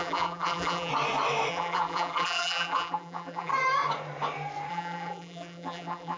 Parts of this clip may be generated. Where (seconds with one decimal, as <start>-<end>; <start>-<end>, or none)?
0.0-0.9; 1.5-3.5; 4.7-6.2